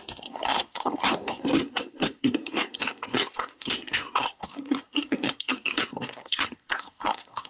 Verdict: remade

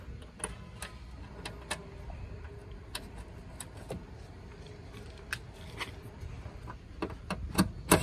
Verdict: recorded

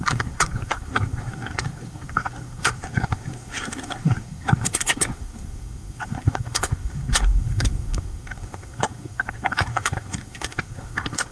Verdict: remade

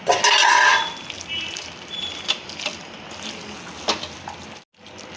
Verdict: recorded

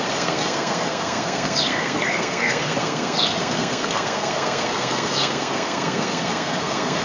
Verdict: remade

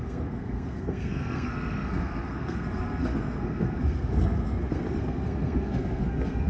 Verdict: remade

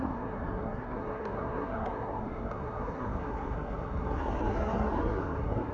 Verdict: remade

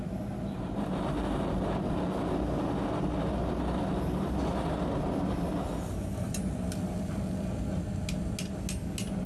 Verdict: recorded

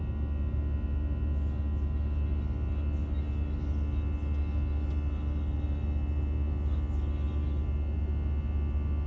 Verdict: recorded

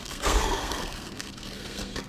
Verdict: remade